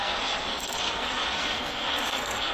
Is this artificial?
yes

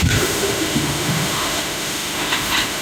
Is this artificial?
yes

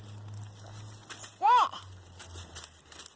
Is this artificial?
no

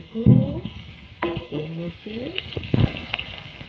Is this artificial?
yes